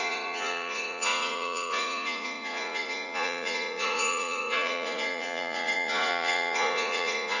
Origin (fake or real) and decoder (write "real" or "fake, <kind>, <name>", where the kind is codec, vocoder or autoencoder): fake, vocoder, Vocos